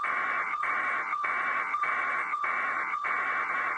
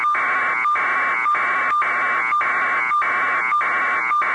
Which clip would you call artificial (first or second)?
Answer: first